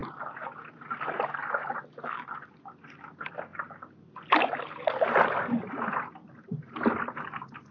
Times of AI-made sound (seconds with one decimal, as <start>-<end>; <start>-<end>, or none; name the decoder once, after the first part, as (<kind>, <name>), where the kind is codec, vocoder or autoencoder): none